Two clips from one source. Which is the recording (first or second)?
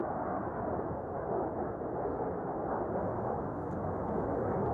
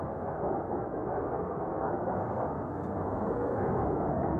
first